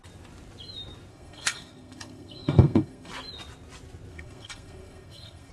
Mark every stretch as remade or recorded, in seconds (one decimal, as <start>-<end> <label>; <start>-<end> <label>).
0.0-1.1 recorded; 1.1-3.1 remade; 3.1-4.1 recorded; 4.1-5.5 remade